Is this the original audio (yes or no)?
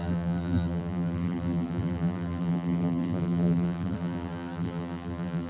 no